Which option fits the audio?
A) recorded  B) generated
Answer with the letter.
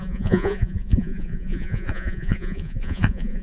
B